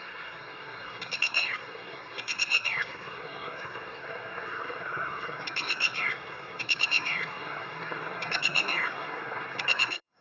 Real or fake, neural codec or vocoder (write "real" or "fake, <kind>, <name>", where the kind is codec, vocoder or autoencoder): fake, codec, SNAC